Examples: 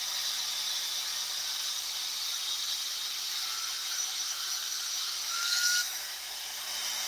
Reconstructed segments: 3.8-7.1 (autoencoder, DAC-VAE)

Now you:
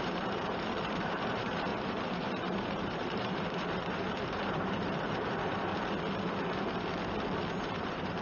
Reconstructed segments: 0.0-5.7 (vocoder, BigVGAN v2); 7.5-8.2

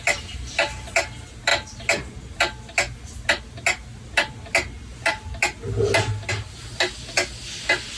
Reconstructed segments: none

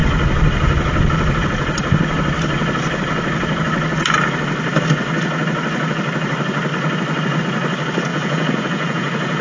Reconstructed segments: 8.1-9.4 (vocoder, Vocos)

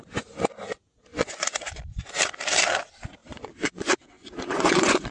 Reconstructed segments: 1.1-1.8 (vocoder, Vocos); 3.2-5.1